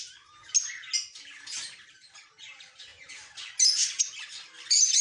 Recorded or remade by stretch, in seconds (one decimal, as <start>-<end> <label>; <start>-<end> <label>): 0.0-5.0 recorded